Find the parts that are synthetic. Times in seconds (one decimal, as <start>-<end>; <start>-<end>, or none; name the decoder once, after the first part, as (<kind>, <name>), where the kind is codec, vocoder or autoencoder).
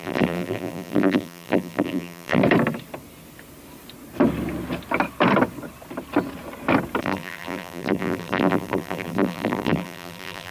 0.0-2.4 (vocoder, BigVGAN v2); 7.0-10.5